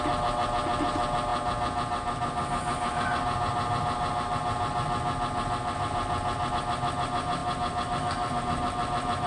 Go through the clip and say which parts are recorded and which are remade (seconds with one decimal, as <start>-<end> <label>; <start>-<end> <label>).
0.0-9.3 recorded